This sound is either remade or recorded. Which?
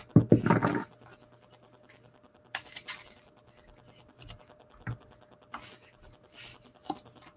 recorded